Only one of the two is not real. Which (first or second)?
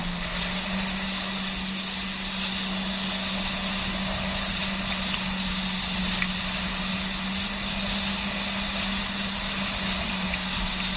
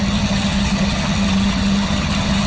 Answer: second